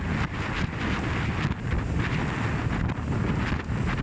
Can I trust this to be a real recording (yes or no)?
yes